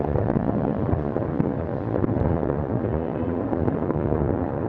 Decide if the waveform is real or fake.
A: fake